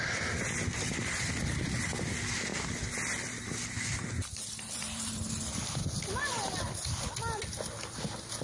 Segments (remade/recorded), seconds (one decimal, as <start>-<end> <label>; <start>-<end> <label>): 0.0-2.5 recorded; 2.5-3.5 remade; 3.5-4.2 recorded; 4.2-6.1 remade; 6.1-8.4 recorded